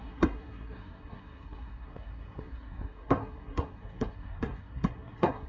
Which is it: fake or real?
fake